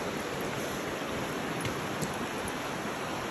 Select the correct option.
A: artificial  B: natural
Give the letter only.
B